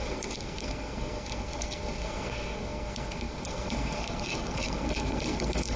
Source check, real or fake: fake